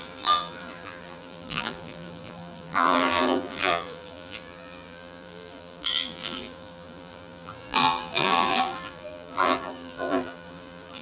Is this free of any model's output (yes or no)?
no